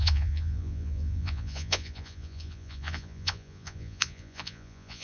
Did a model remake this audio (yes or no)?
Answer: yes